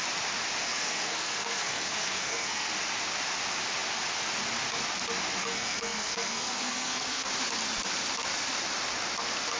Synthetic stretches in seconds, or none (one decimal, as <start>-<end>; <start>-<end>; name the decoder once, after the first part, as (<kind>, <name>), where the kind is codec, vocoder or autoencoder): 0.6-2.7 (codec, SNAC); 5.4-7.3